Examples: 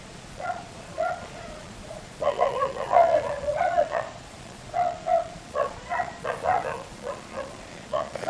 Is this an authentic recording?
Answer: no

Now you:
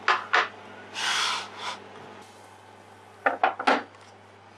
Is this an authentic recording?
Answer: yes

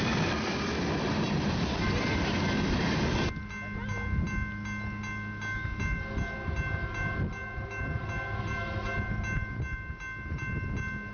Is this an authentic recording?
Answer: yes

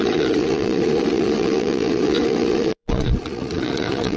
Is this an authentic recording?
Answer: no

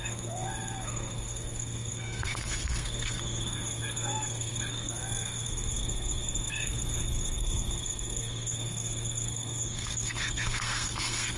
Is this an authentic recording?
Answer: no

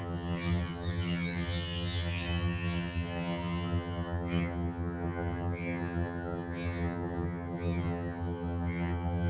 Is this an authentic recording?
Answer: no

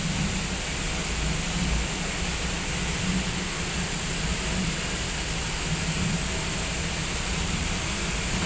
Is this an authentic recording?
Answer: yes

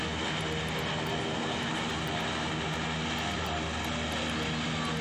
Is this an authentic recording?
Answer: yes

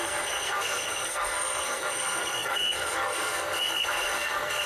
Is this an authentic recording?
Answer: no